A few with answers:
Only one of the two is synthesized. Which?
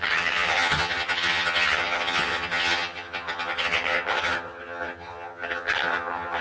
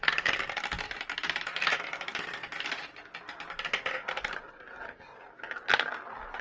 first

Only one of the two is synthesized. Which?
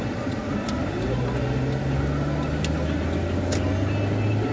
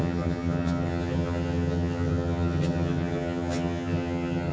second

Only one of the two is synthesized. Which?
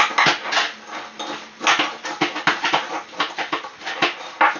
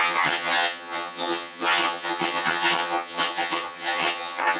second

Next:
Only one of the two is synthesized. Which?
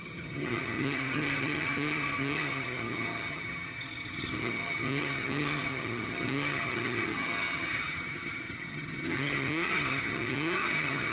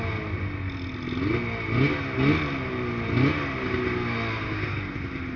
first